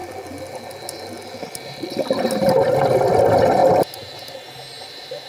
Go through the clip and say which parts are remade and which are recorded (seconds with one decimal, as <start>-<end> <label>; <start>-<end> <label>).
0.0-5.3 recorded